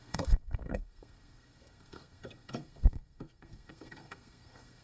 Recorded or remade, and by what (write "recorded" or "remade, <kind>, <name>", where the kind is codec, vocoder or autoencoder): remade, codec, SNAC